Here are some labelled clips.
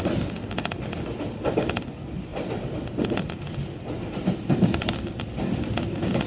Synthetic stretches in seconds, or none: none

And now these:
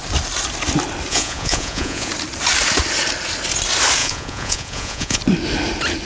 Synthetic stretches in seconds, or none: 1.1-2.1 (vocoder, Vocos); 4.0-5.2

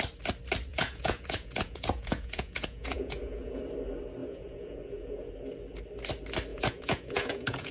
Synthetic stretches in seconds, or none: 0.7-3.6 (vocoder, Vocos); 4.2-5.3; 6.5-7.7

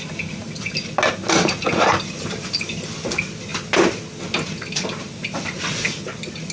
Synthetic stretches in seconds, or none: none

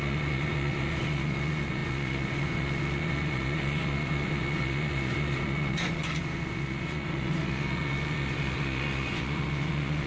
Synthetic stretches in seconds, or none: 0.0-10.1 (vocoder, Vocos)